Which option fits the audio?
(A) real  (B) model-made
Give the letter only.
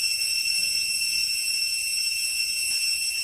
B